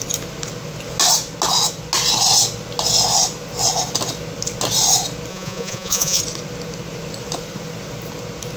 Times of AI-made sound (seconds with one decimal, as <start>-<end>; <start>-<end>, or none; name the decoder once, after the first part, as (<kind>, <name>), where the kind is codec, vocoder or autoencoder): 5.3-6.2 (vocoder, Vocos)